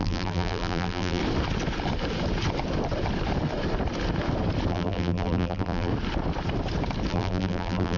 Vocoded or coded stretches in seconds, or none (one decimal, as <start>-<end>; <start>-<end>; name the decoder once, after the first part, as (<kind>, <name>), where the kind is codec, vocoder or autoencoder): 0.0-1.2 (vocoder, BigVGAN v2); 4.7-5.9; 7.1-8.0